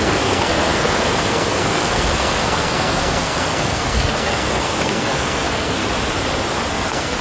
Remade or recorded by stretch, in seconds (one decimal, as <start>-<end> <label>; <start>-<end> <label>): 0.0-5.8 remade; 5.8-6.7 recorded; 6.7-7.2 remade